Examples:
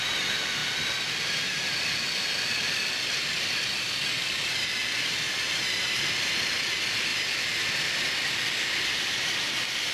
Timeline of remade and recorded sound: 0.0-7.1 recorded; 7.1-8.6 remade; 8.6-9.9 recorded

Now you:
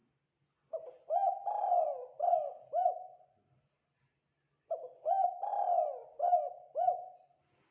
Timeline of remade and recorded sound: 0.0-7.7 recorded

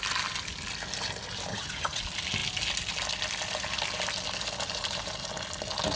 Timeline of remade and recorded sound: 0.0-1.5 recorded; 1.5-2.0 remade; 2.0-6.0 recorded

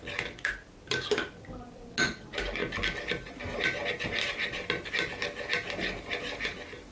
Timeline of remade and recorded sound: 0.0-6.9 recorded

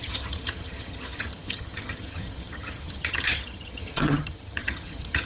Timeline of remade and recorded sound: 0.0-5.3 remade

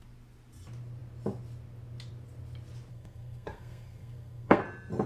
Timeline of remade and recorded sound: 0.0-2.9 recorded; 2.9-4.6 remade; 4.6-5.1 recorded

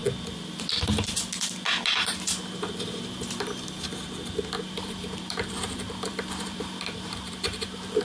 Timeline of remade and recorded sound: 0.0-4.7 recorded; 4.7-8.0 remade

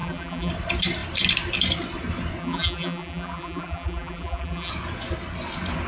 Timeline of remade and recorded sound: 0.0-0.5 remade; 0.5-2.4 recorded; 2.4-4.7 remade; 4.7-5.9 recorded